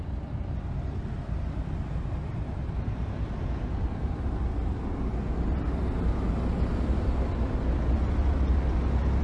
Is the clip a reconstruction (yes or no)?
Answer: no